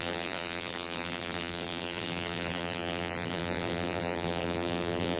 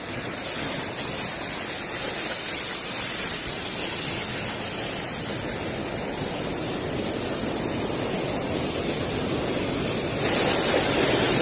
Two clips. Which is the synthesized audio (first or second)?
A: first